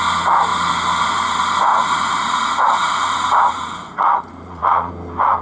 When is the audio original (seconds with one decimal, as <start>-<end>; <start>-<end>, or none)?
0.0-1.7; 4.9-5.4